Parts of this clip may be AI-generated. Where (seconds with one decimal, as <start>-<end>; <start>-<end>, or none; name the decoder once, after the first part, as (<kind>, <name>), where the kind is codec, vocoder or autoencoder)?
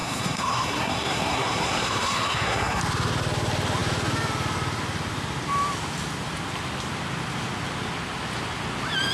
0.0-2.8 (codec, SNAC)